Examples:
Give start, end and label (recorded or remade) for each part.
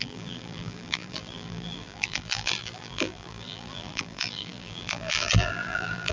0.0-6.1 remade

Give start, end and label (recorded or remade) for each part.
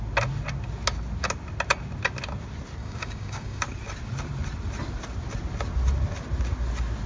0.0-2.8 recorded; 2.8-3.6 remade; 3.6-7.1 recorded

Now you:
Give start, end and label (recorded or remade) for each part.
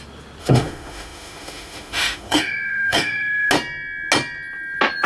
0.0-0.4 recorded; 0.4-3.5 remade; 3.5-5.1 recorded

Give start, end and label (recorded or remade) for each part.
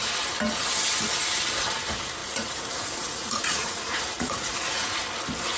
0.0-2.2 recorded; 2.2-5.0 remade; 5.0-5.6 recorded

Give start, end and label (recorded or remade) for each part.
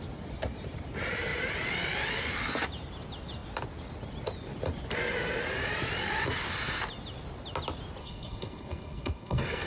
0.0-8.0 recorded; 8.0-9.7 remade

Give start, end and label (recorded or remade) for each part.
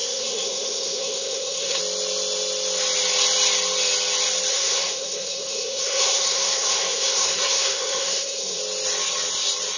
0.0-1.8 remade; 1.8-4.5 recorded; 4.5-8.6 remade; 8.6-9.8 recorded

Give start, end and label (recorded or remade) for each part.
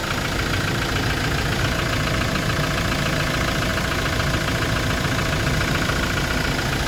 0.0-6.9 recorded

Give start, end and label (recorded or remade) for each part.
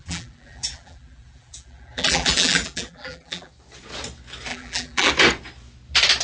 0.0-3.5 remade; 3.5-4.5 recorded; 4.5-5.1 remade; 5.1-6.2 recorded